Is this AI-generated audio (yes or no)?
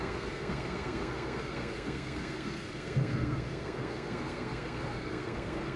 yes